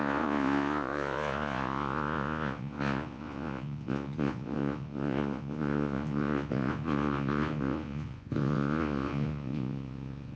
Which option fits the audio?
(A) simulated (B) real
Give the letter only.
A